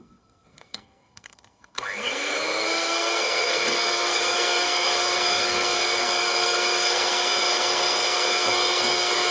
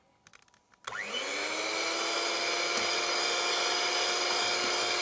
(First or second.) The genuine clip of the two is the second